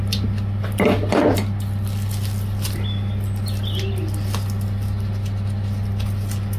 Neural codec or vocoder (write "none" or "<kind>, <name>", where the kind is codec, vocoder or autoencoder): none